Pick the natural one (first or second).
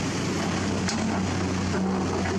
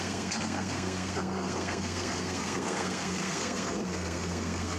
first